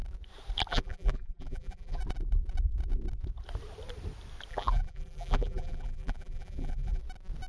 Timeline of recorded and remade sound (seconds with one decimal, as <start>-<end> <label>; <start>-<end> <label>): 0.0-0.7 recorded; 0.7-2.0 remade; 2.0-4.5 recorded; 4.5-7.0 remade; 7.0-7.5 recorded